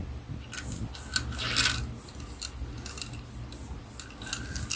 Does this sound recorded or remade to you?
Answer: recorded